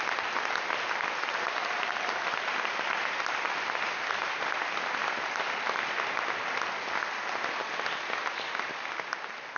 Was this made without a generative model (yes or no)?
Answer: yes